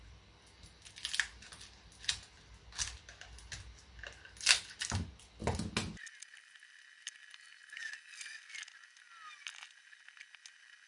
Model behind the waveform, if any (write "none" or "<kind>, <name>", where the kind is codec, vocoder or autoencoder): none